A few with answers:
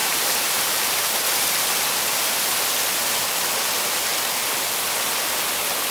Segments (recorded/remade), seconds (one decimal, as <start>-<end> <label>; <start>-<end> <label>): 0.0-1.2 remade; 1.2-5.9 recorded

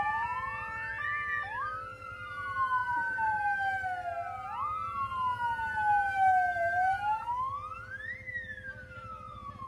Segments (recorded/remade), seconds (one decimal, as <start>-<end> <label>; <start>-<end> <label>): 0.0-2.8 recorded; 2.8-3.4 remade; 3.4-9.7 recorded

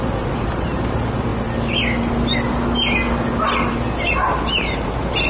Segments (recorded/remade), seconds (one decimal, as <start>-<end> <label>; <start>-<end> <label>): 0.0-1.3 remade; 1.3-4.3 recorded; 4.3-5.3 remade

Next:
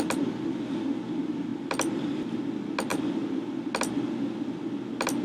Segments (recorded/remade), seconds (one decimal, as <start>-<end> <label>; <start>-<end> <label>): 0.0-1.5 recorded; 1.5-2.2 remade; 2.2-5.2 recorded